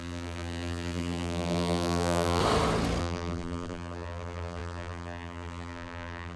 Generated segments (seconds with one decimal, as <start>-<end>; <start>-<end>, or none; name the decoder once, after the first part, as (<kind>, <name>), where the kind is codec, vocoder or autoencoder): 0.0-2.4 (vocoder, BigVGAN v2); 3.0-6.4